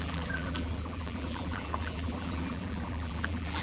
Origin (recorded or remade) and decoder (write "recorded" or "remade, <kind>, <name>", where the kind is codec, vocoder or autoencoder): remade, vocoder, BigVGAN v2